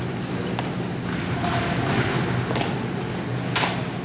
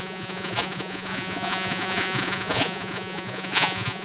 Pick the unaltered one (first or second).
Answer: first